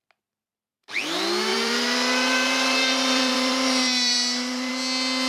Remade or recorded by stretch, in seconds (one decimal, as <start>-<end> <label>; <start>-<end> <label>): 0.0-1.5 recorded; 1.5-4.7 remade; 4.7-5.3 recorded